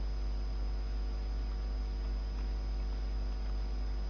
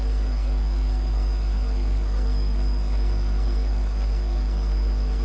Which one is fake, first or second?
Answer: second